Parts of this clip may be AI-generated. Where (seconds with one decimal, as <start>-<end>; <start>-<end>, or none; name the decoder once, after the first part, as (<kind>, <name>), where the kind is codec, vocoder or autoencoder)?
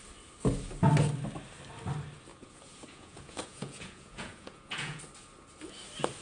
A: 2.3-5.0 (vocoder, Vocos)